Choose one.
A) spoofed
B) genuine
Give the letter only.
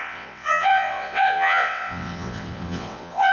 A